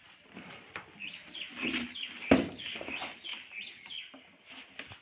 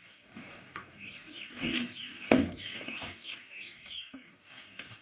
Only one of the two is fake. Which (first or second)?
second